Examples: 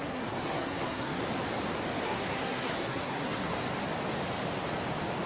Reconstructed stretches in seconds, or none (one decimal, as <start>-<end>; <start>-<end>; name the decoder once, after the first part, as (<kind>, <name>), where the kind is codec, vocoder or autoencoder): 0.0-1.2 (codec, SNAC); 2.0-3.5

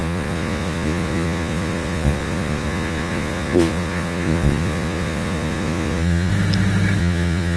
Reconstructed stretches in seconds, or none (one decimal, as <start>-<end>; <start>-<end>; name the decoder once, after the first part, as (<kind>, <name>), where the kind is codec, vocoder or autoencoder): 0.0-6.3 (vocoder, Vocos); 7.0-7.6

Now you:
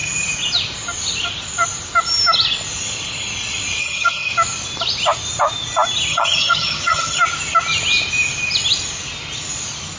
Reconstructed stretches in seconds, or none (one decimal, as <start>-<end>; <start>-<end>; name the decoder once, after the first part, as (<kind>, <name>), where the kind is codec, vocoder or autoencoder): 3.8-4.3 (vocoder, HiFi-GAN); 6.1-7.2

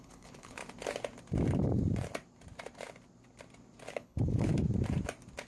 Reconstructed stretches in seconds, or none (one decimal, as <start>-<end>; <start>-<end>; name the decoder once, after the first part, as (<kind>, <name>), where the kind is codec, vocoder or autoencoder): 0.0-0.6 (codec, HILCodec); 3.9-4.5

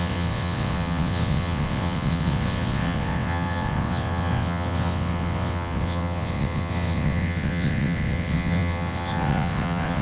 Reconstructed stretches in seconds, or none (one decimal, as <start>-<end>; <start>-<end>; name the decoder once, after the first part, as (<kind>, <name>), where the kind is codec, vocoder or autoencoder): 0.0-10.0 (vocoder, WaveNeXt)

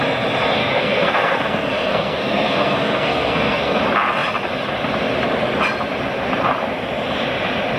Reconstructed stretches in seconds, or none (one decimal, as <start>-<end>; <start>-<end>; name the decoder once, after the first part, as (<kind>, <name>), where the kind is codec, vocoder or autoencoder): 0.6-3.8 (codec, SNAC)

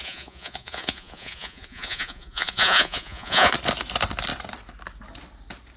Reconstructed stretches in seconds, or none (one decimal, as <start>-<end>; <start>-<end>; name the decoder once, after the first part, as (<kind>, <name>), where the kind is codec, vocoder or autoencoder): 0.0-3.5 (vocoder, Vocos)

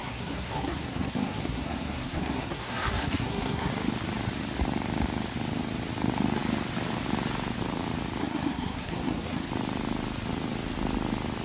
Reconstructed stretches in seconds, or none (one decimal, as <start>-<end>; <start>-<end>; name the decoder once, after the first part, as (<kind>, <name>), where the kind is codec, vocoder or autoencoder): 0.0-3.7 (codec, SNAC); 8.2-9.5